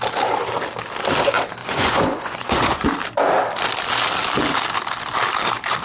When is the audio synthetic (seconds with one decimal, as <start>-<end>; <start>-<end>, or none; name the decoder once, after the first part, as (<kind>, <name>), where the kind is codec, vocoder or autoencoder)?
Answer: 1.6-2.9 (vocoder, Vocos)